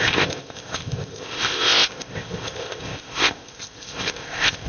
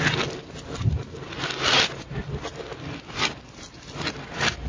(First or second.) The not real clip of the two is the first